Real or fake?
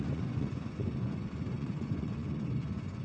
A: fake